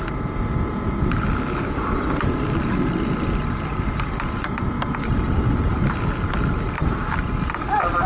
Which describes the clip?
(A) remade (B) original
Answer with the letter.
B